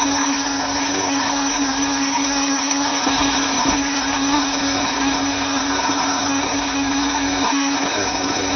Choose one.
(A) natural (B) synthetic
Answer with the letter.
B